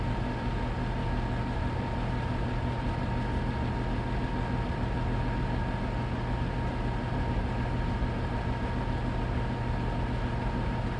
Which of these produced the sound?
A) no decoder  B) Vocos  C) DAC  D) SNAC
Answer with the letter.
A